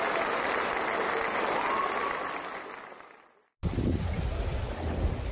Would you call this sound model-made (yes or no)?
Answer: no